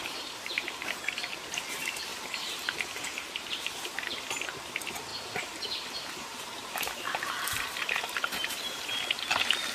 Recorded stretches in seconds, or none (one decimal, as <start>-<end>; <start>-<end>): 0.9-2.1; 4.2-5.1; 8.9-9.7